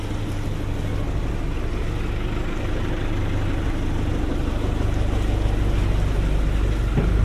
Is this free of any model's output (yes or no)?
yes